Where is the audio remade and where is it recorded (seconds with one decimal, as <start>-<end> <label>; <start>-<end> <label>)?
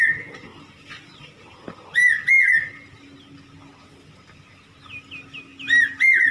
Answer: 0.0-6.3 recorded